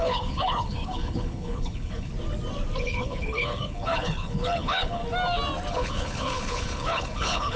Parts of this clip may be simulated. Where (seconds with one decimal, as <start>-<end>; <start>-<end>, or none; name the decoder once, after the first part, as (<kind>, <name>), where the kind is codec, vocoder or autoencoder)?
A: 0.0-2.1 (codec, HILCodec); 2.8-5.0; 5.7-7.6